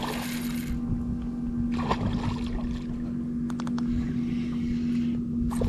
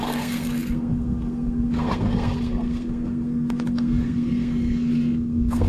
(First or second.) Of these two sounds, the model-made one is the second